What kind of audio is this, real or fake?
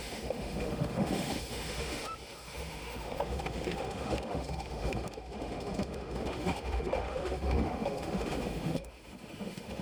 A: fake